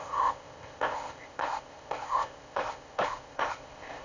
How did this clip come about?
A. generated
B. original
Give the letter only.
A